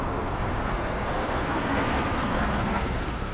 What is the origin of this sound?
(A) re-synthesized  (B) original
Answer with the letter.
A